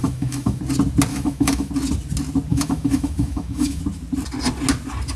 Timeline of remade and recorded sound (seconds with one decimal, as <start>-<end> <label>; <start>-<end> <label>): 0.0-0.6 remade; 0.6-1.1 recorded; 1.1-1.7 remade; 1.7-2.5 recorded; 2.5-3.8 remade; 3.8-5.2 recorded